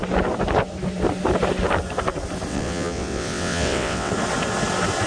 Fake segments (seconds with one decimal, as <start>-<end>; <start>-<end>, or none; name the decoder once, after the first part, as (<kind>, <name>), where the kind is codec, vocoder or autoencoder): 2.5-4.1 (vocoder, WaveNeXt)

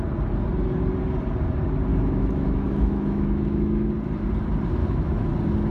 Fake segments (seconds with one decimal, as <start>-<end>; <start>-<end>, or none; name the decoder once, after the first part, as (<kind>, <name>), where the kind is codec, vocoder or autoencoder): 1.9-3.9 (autoencoder, DAC-VAE); 4.8-5.3

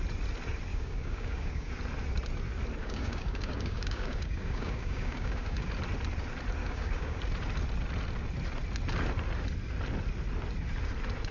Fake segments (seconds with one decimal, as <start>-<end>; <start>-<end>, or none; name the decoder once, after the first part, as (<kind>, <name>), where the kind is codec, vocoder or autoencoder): 0.7-1.7 (codec, DAC); 2.8-5.7; 6.6-7.2

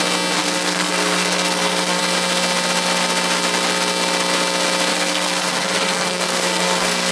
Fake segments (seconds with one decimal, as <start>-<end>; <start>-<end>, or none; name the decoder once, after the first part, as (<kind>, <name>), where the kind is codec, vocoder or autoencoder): 0.4-2.0 (codec, SNAC); 4.9-7.1

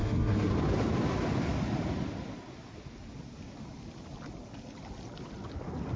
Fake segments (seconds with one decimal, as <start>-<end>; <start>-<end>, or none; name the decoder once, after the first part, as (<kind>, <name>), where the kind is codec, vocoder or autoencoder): 0.0-0.5 (codec, SNAC)